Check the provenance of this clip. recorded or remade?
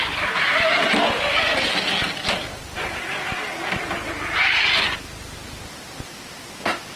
recorded